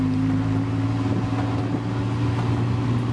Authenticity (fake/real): real